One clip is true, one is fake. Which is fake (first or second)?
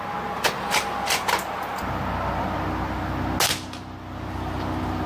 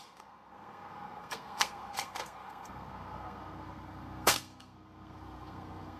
second